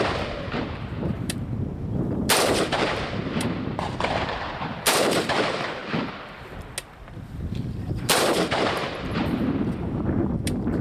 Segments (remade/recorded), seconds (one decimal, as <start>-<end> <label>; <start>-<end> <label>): 0.0-5.8 remade; 5.8-7.8 recorded; 7.8-10.8 remade